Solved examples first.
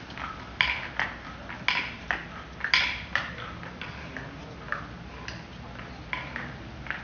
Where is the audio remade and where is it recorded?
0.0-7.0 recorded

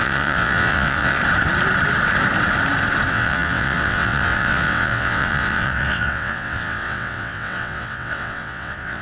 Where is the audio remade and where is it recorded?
0.0-1.2 remade; 1.2-3.1 recorded; 3.1-9.0 remade

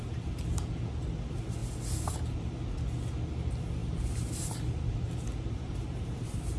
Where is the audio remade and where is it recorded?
0.0-3.8 recorded; 3.8-6.6 remade

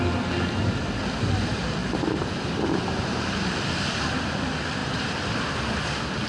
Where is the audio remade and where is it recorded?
0.0-4.8 recorded; 4.8-5.5 remade; 5.5-6.3 recorded

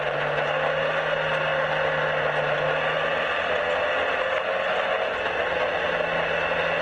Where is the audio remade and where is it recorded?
0.0-6.8 recorded

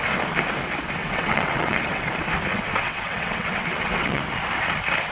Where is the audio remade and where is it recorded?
0.0-1.0 recorded; 1.0-2.1 remade; 2.1-2.5 recorded; 2.5-4.2 remade; 4.2-5.1 recorded

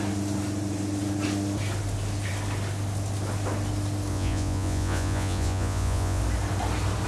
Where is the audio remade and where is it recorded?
0.0-4.1 recorded; 4.1-6.2 remade; 6.2-7.1 recorded

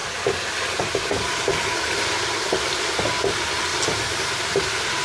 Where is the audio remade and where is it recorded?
0.0-3.0 remade; 3.0-3.7 recorded; 3.7-4.6 remade; 4.6-5.0 recorded